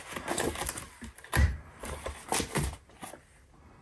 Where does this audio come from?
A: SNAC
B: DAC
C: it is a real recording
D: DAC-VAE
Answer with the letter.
C